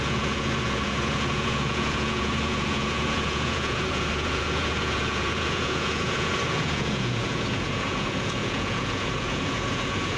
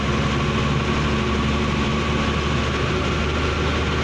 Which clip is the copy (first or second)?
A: first